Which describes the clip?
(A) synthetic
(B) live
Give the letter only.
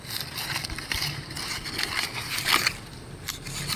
B